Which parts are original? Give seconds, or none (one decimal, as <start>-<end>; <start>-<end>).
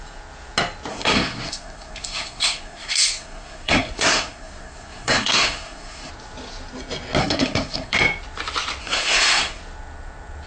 0.0-0.9; 6.1-7.2; 7.9-8.8; 9.6-10.5